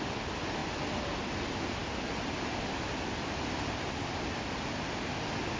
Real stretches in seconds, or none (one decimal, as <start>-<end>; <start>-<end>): 0.0-5.6